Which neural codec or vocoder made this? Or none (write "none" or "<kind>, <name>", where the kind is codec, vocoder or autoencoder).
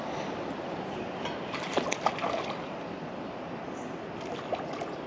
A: none